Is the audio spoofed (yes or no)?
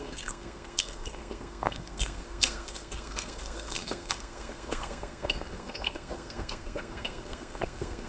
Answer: yes